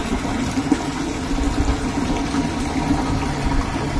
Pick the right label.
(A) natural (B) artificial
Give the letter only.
A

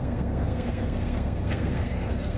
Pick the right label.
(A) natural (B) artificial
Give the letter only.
B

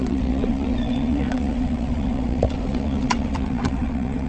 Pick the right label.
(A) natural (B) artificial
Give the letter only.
B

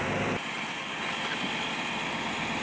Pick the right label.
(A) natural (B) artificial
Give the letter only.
B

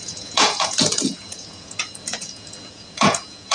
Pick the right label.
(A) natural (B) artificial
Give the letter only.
B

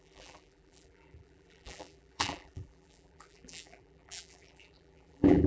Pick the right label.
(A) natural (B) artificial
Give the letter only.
B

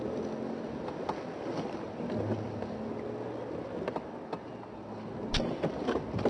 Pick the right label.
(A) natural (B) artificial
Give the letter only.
A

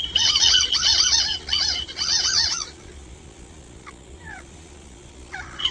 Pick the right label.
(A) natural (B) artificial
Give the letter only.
B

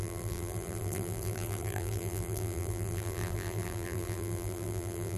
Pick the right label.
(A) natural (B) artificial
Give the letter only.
B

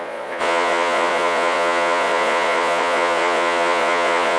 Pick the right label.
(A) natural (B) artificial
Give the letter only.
B